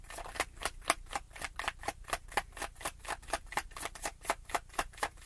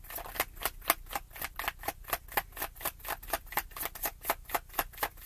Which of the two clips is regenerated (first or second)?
first